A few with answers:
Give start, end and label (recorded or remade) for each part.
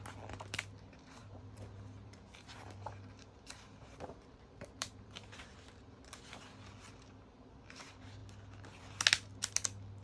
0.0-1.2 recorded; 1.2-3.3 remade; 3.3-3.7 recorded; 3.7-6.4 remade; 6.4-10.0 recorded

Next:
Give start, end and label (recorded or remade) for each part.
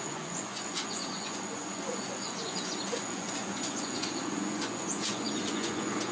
0.0-6.1 remade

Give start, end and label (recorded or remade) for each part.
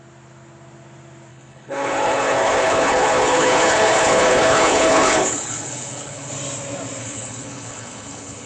0.0-1.3 recorded; 1.3-6.3 remade; 6.3-7.0 recorded; 7.0-8.5 remade